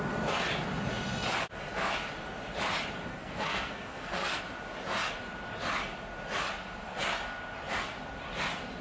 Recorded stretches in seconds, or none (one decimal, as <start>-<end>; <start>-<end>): 0.0-3.1; 4.4-8.8